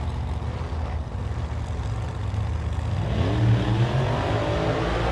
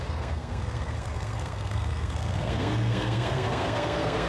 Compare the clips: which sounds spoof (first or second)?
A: second